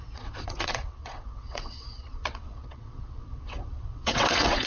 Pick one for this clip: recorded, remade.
remade